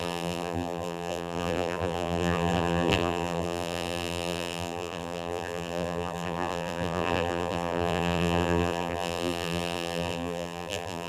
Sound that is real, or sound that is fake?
fake